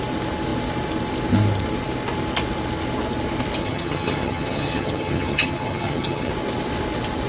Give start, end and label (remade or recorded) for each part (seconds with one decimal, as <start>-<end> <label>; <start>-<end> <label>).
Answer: 0.0-3.6 recorded; 3.6-6.3 remade; 6.3-7.3 recorded